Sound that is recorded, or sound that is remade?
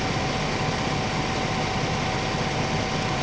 recorded